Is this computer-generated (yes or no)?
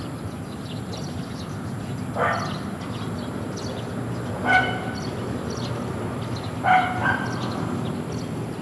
no